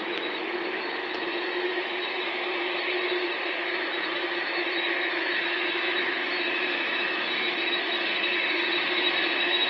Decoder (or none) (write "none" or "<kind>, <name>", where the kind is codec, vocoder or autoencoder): autoencoder, DAC-VAE